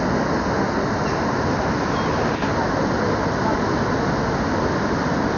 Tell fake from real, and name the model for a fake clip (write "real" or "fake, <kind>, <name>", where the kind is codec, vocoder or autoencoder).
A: real